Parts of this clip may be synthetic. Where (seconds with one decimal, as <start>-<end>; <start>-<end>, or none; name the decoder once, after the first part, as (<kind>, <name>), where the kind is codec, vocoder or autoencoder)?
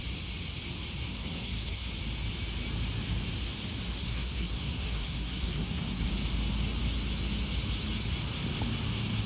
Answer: 1.1-1.9 (codec, SNAC); 4.0-6.1